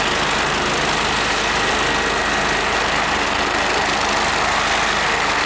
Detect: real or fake real